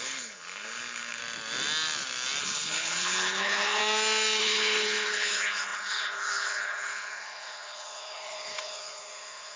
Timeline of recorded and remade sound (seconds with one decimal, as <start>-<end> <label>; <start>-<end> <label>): 0.0-1.2 remade; 1.2-2.4 recorded; 2.4-3.8 remade; 3.8-4.4 recorded; 4.4-9.6 remade